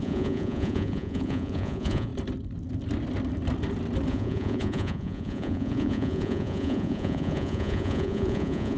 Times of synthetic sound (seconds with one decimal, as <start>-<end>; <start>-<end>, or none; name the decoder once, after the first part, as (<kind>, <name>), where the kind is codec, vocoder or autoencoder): 0.0-2.1 (vocoder, Vocos); 4.1-8.8